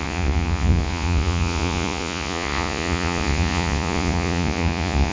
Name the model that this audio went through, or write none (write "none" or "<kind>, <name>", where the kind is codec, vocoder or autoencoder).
vocoder, Vocos